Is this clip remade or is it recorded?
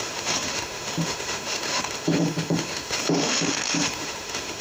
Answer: remade